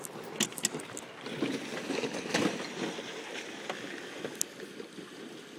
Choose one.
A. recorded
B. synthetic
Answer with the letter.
A